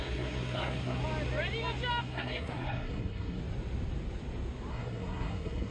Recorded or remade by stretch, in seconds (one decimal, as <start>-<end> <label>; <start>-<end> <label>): 0.0-1.0 remade; 1.0-2.0 recorded; 2.0-3.4 remade; 3.4-4.7 recorded; 4.7-5.7 remade